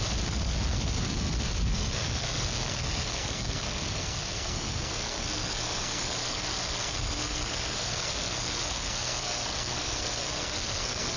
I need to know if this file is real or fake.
fake